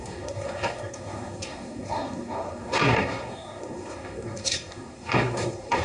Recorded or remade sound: remade